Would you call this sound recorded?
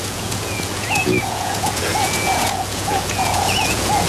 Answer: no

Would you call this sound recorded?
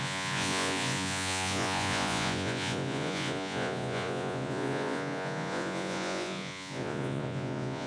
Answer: no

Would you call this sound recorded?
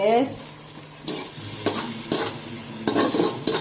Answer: yes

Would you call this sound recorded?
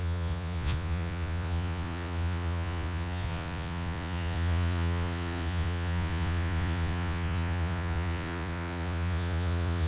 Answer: no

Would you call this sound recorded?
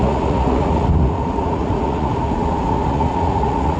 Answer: no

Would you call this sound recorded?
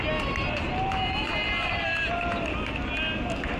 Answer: yes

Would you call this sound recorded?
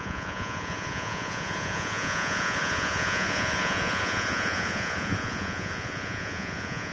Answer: no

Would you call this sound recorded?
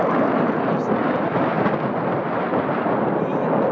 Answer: yes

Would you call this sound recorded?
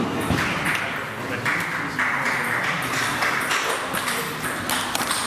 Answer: yes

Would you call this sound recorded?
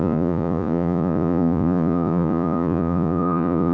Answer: no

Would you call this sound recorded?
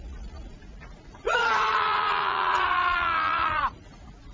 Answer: no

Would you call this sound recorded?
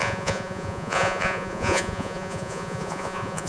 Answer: no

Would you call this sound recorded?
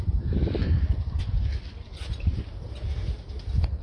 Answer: yes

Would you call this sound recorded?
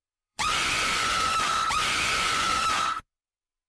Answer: no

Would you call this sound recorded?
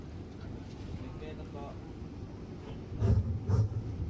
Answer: yes